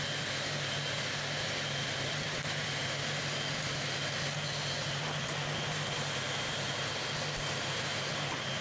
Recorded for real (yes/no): yes